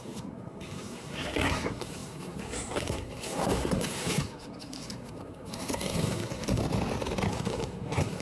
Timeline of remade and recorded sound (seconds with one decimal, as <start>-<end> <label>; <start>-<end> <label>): 0.0-6.6 remade; 6.6-7.3 recorded; 7.3-8.2 remade